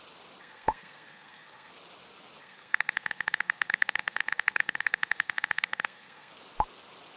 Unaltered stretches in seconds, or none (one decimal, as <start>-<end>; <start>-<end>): 0.0-0.4; 1.7-2.4; 6.3-7.2